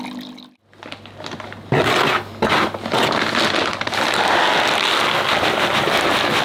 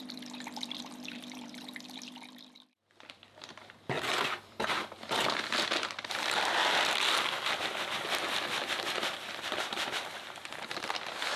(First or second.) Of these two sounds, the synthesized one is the second